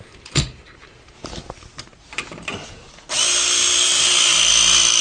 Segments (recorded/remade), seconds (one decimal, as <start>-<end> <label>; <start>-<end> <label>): 0.0-5.0 recorded